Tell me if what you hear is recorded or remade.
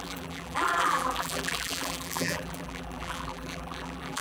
remade